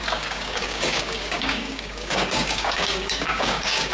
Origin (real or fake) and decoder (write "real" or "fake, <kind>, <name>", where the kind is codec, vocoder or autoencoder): fake, codec, DAC